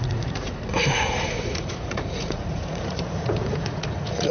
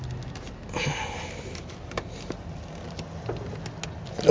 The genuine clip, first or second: second